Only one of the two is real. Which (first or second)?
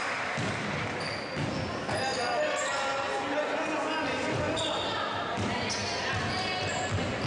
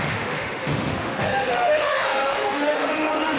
first